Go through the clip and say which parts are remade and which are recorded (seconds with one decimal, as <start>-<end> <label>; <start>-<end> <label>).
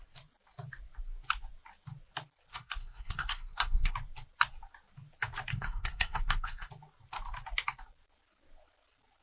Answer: 0.0-2.5 recorded; 2.5-3.9 remade; 3.9-5.5 recorded; 5.5-6.7 remade; 6.7-9.2 recorded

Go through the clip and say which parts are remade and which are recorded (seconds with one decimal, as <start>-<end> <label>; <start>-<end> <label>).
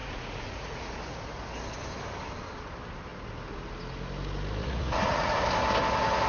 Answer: 0.0-0.9 remade; 0.9-4.6 recorded; 4.6-5.4 remade; 5.4-6.3 recorded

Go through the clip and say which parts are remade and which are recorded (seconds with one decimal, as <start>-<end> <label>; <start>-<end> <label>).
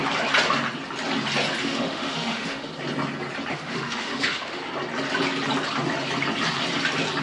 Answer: 0.0-1.6 recorded; 1.6-2.7 remade; 2.7-3.5 recorded; 3.5-4.6 remade; 4.6-7.2 recorded